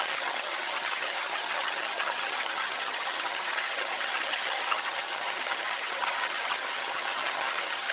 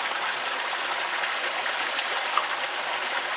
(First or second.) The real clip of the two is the second